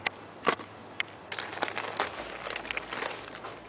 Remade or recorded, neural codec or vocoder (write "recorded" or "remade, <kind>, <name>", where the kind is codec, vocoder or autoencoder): recorded